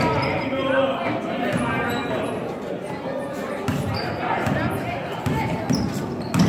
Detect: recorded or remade recorded